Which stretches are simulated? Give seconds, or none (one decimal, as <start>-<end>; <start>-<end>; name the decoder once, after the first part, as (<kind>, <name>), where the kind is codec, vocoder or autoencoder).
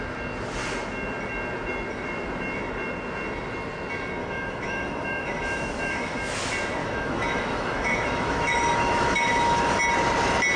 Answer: 4.2-6.2 (autoencoder, DAC-VAE); 6.8-9.8